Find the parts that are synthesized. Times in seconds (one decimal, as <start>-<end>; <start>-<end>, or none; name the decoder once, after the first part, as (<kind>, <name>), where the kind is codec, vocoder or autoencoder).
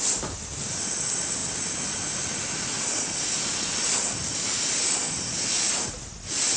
none